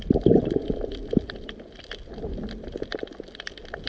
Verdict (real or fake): real